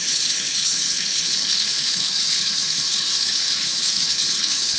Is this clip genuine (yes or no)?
no